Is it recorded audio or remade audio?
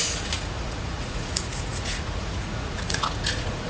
remade